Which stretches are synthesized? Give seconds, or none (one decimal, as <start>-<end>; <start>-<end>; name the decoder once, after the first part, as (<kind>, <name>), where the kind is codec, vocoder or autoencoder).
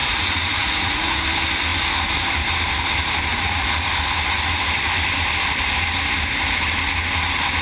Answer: 0.0-1.2 (vocoder, Vocos); 3.3-3.9